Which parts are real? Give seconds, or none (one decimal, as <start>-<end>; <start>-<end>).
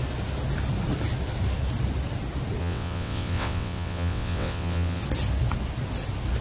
0.0-2.6; 5.0-6.4